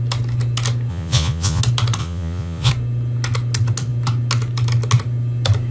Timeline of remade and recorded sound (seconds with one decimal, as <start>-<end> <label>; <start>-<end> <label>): 0.0-0.9 recorded; 0.9-1.6 remade; 1.6-2.0 recorded; 2.0-2.7 remade; 2.7-5.7 recorded